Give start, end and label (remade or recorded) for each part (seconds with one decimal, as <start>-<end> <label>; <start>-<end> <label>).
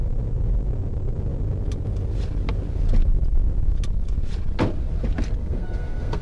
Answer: 0.0-5.4 recorded; 5.4-6.2 remade